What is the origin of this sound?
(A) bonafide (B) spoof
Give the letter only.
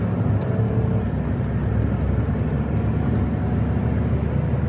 A